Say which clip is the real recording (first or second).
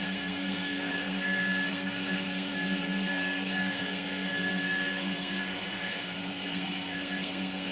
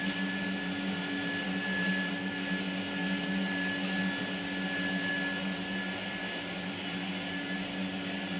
second